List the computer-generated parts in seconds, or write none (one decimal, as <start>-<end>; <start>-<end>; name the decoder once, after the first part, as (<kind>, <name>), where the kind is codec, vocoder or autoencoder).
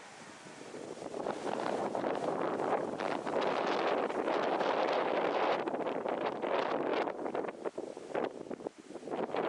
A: none